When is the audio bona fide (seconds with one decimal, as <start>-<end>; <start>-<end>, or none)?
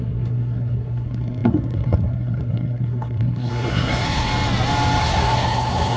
4.3-5.0